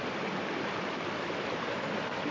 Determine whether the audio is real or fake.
real